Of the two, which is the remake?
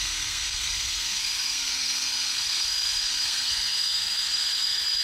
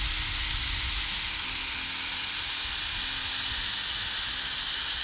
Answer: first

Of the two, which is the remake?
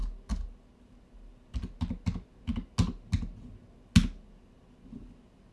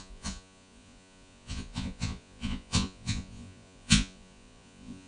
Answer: second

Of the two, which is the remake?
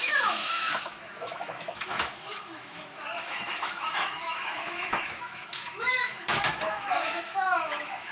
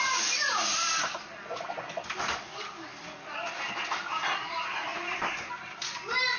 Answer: first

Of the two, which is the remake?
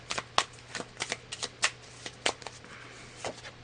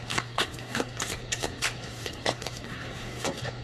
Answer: second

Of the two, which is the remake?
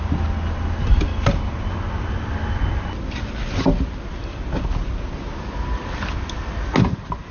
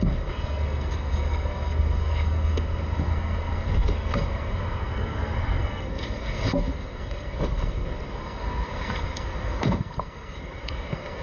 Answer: second